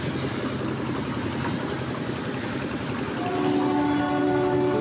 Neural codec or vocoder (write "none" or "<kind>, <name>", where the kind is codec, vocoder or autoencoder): none